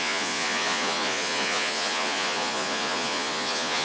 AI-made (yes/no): yes